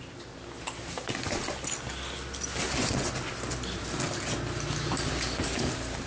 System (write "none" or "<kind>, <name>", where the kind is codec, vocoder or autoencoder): none